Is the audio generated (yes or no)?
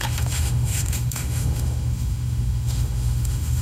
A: yes